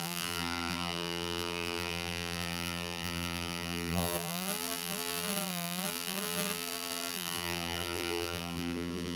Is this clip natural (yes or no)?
no